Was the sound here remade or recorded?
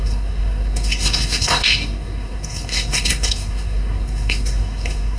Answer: remade